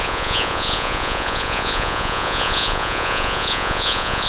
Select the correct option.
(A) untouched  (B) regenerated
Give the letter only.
B